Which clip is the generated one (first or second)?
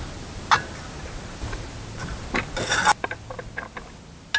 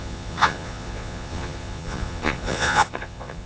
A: second